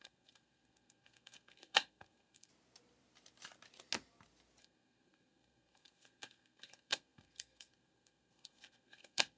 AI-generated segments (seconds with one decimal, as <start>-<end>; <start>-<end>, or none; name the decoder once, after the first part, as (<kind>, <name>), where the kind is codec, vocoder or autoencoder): 0.0-2.5 (codec, SNAC); 4.6-9.4